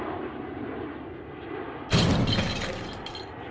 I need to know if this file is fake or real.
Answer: real